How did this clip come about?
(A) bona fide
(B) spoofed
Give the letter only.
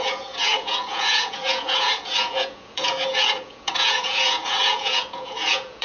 B